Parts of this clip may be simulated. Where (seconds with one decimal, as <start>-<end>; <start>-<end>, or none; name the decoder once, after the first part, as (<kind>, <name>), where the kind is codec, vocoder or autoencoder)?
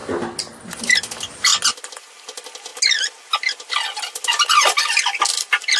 none